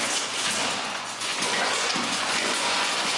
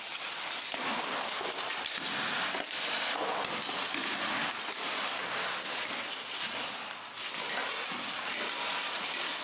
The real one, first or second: second